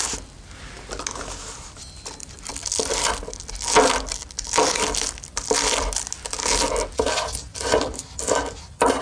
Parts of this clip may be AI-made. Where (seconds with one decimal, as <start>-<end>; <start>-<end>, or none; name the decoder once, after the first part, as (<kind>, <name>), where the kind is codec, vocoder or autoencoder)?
none